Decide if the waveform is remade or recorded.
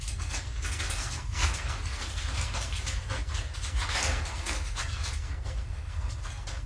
remade